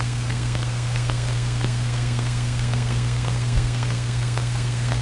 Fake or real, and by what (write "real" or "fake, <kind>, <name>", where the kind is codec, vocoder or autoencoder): fake, codec, SNAC